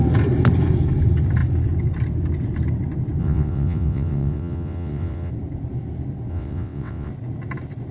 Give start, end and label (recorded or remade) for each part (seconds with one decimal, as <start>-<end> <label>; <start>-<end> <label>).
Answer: 0.0-3.2 recorded; 3.2-5.3 remade; 5.3-6.3 recorded; 6.3-7.1 remade; 7.1-7.9 recorded